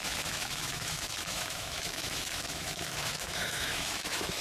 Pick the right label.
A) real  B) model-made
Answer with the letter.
B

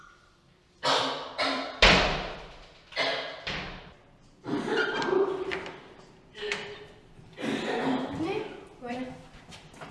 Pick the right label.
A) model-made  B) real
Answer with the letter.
A